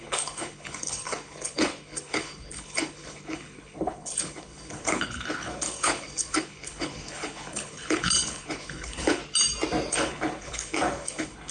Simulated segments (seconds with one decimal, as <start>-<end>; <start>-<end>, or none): 0.0-9.2; 9.9-11.5